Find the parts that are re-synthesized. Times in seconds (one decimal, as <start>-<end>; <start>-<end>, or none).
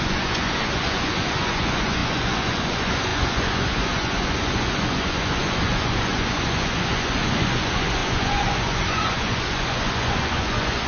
0.0-10.9